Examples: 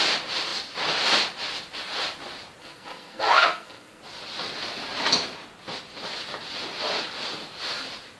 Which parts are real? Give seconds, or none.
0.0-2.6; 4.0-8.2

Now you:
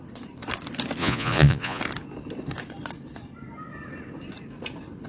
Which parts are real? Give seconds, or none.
0.0-1.0; 1.8-5.1

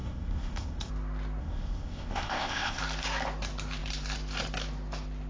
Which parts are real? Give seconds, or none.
0.9-1.4; 2.8-5.3